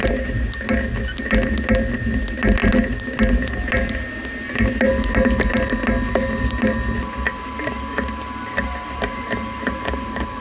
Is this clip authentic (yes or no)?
yes